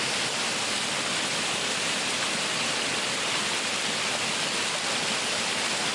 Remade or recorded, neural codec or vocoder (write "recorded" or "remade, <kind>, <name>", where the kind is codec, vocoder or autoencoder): recorded